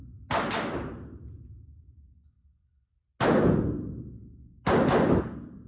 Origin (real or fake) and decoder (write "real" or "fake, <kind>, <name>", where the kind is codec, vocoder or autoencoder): real